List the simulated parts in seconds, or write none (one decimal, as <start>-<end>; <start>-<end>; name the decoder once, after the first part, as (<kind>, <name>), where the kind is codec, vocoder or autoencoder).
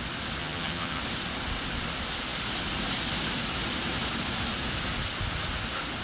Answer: 0.4-1.0 (vocoder, HiFi-GAN)